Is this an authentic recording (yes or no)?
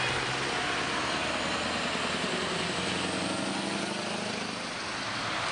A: yes